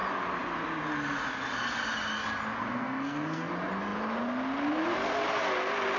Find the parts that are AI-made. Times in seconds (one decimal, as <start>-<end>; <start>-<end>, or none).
2.6-3.5